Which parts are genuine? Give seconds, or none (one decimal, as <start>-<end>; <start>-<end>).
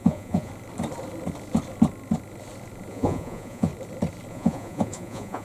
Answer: 0.5-2.9; 3.7-4.3